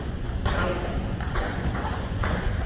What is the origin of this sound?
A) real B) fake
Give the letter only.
B